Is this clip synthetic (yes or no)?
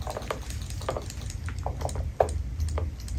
no